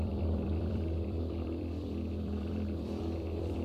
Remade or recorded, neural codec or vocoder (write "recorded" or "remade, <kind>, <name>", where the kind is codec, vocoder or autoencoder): remade, vocoder, BigVGAN v2